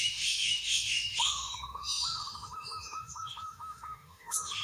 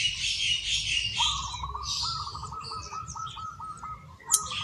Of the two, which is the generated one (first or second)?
first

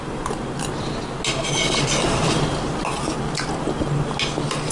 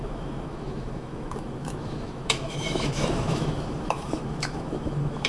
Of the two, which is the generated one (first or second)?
second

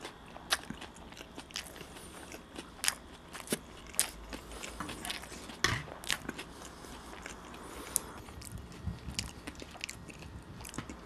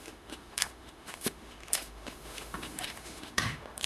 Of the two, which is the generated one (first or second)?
second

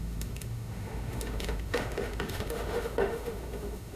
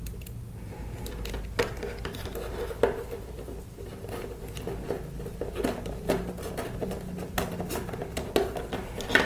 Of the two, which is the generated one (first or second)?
first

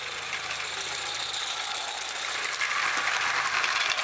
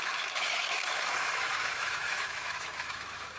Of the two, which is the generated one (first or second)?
second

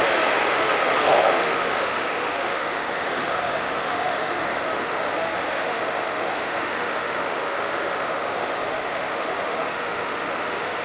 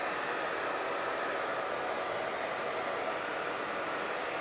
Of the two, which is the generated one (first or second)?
first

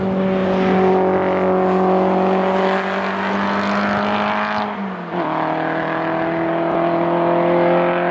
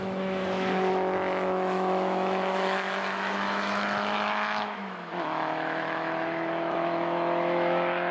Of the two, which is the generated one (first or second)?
second